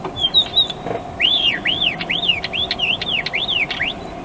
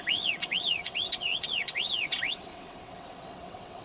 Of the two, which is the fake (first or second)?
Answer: second